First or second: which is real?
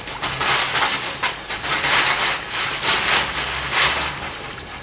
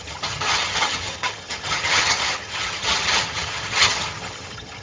first